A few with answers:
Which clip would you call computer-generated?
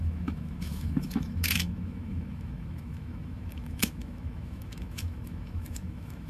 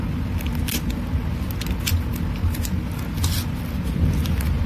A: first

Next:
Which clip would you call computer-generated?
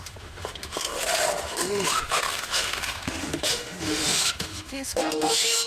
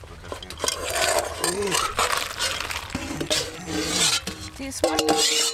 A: first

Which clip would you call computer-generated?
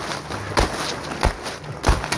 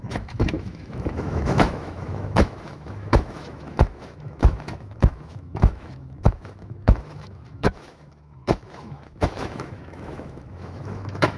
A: second